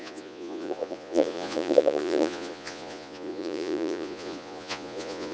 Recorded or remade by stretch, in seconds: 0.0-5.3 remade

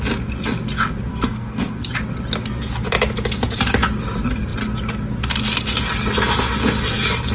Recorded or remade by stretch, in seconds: 0.0-1.1 recorded; 1.1-1.9 remade; 1.9-7.3 recorded

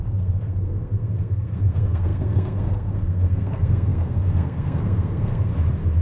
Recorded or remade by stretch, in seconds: 0.0-5.5 remade; 5.5-6.0 recorded